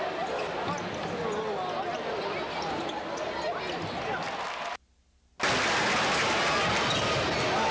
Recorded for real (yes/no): yes